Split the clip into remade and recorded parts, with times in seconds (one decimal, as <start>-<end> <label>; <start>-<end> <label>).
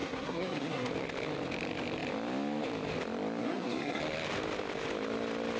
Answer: 0.0-0.9 remade; 0.9-3.4 recorded; 3.4-4.0 remade; 4.0-5.6 recorded